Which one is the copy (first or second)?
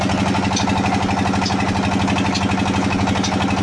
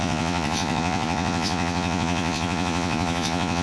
second